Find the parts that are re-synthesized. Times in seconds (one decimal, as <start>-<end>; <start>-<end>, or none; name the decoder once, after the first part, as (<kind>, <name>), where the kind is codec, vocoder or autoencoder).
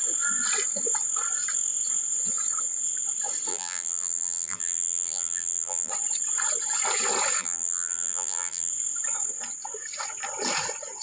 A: 3.5-5.9 (vocoder, BigVGAN v2); 7.4-8.7